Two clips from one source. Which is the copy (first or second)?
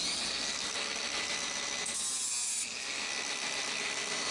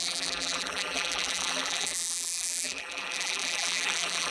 second